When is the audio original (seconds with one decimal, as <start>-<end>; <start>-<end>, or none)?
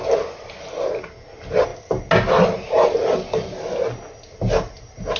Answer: 0.0-5.2